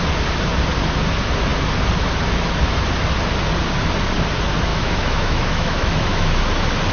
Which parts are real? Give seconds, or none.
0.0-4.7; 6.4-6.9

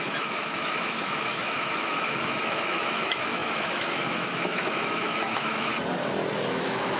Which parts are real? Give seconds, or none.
5.7-6.5